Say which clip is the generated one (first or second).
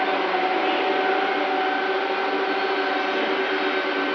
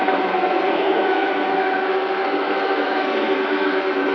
second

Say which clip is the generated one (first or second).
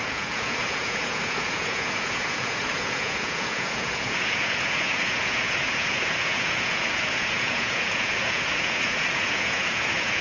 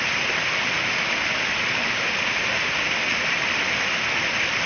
first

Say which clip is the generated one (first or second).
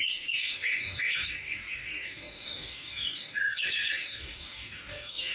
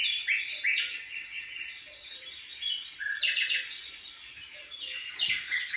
first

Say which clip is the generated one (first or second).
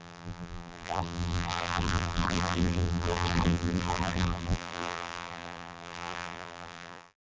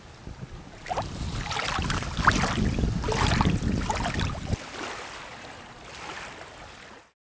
first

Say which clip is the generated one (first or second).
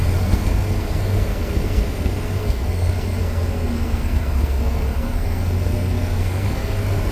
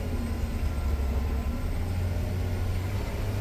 first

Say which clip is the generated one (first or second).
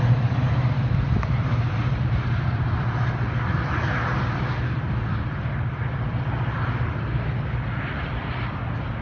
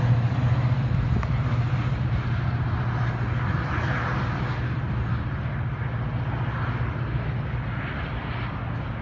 first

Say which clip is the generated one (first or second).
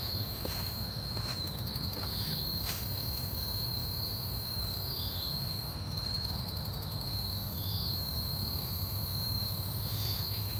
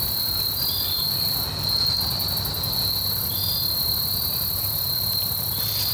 first